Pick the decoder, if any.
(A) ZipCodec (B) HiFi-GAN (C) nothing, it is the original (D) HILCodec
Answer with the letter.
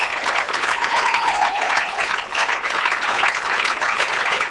D